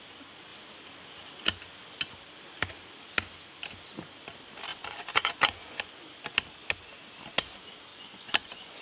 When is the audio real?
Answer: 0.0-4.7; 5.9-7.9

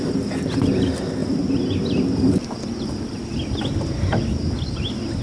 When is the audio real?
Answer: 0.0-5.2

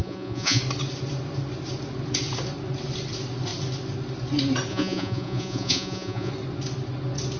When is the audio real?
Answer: 0.6-4.7; 6.3-7.4

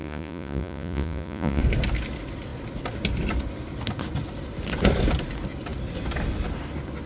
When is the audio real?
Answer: 1.6-7.1

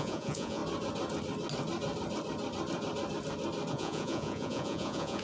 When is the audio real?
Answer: 0.6-3.7